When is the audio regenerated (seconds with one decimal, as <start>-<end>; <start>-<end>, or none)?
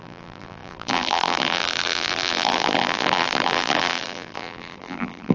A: 0.0-5.3